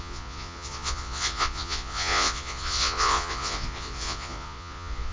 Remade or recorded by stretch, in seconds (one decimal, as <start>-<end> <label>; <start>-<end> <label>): 0.0-5.1 remade